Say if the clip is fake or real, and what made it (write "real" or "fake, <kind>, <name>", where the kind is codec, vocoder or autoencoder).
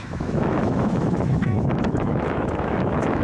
fake, autoencoder, DAC-VAE